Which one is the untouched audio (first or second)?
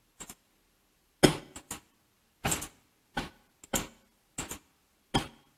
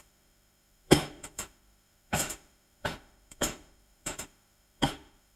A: first